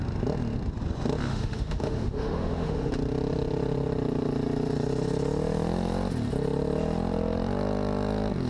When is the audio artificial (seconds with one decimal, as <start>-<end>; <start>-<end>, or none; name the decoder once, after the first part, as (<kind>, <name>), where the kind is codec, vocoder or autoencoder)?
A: 1.3-2.9 (autoencoder, DAC-VAE)